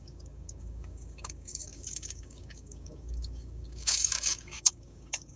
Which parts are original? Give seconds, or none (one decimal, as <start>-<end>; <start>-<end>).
none